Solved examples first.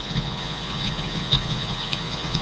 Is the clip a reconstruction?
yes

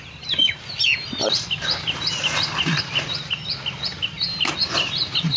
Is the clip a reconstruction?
no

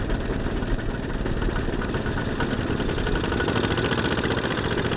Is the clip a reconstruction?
no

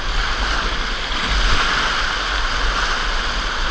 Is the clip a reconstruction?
no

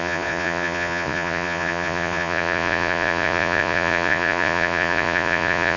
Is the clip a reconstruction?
yes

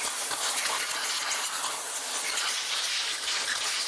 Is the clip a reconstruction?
no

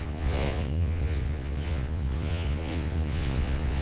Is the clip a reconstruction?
yes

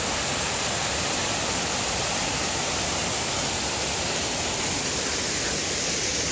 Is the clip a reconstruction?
no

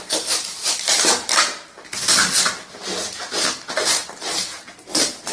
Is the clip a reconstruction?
no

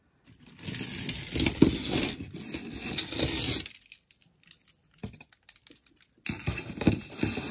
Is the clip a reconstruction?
no